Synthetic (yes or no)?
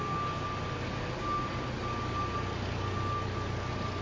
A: no